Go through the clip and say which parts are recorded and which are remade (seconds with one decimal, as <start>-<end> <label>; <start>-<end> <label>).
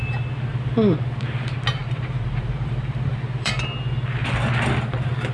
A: 0.0-1.8 recorded; 1.8-3.5 remade; 3.5-5.3 recorded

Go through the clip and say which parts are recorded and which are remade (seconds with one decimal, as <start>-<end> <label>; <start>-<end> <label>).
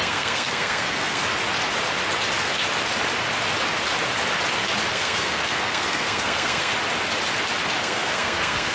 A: 0.0-1.2 remade; 1.2-4.9 recorded; 4.9-6.7 remade; 6.7-7.8 recorded; 7.8-8.7 remade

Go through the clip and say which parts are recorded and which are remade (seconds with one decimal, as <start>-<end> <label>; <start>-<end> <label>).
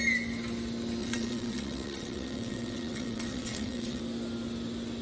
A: 0.0-1.0 recorded; 1.0-4.0 remade; 4.0-5.0 recorded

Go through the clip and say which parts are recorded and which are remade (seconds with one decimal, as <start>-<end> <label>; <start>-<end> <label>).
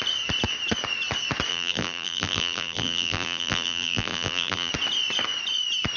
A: 0.0-1.5 recorded; 1.5-4.7 remade; 4.7-6.0 recorded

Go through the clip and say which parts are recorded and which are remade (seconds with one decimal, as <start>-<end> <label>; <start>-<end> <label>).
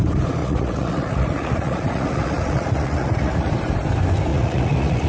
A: 0.0-0.4 recorded; 0.4-3.5 remade; 3.5-4.3 recorded; 4.3-5.1 remade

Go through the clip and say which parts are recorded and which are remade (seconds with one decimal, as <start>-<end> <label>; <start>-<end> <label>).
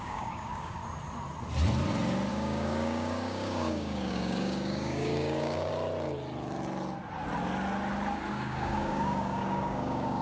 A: 0.0-0.8 remade; 0.8-2.3 recorded; 2.3-5.7 remade; 5.7-8.3 recorded; 8.3-10.2 remade